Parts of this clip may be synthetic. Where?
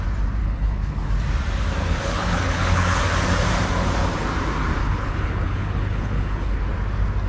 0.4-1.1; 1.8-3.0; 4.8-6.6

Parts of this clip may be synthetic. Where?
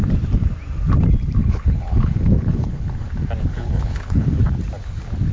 1.4-3.1; 3.5-4.4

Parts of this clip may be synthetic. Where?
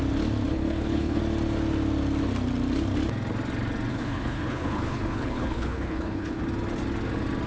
0.5-1.2; 3.9-6.4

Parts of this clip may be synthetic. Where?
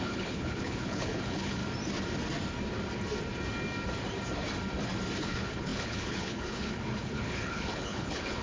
0.0-1.6; 5.2-8.4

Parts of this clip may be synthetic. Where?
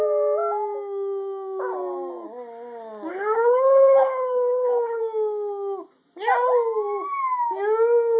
3.1-5.0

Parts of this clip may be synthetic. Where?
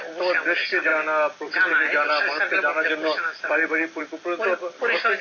none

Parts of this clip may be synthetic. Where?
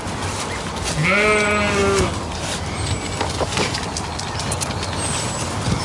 none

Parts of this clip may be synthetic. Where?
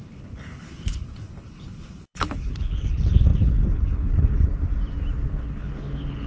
0.0-4.5; 5.3-6.3